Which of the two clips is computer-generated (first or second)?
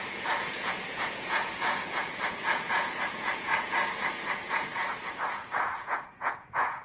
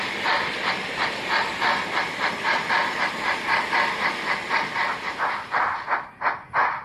first